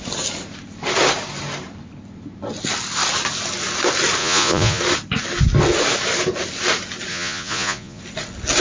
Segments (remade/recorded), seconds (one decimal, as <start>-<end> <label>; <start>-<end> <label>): 0.0-4.2 recorded; 4.2-4.8 remade; 4.8-7.1 recorded; 7.1-8.0 remade; 8.0-8.6 recorded